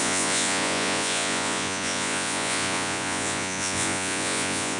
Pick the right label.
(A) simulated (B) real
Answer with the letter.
A